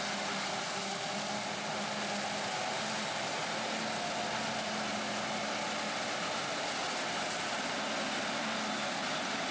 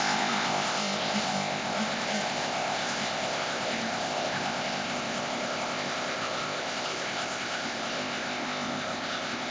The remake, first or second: second